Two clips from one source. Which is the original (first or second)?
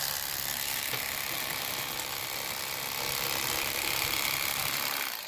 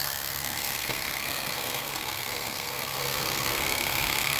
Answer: first